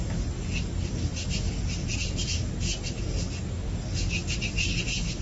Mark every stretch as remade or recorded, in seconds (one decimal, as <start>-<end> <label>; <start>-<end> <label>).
0.0-1.9 recorded; 1.9-3.4 remade; 3.4-5.2 recorded